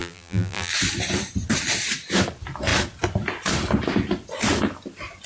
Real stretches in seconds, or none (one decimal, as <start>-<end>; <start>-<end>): 0.7-5.3